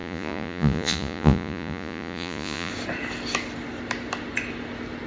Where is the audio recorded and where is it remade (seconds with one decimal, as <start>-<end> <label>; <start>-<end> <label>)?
0.0-2.7 remade; 2.7-5.1 recorded